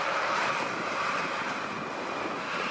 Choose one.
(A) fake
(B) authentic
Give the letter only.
B